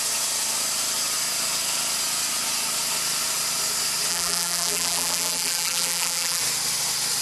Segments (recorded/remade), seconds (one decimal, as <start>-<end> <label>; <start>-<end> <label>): 0.0-4.1 recorded; 4.1-6.4 remade; 6.4-7.2 recorded